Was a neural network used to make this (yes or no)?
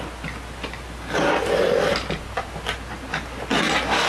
no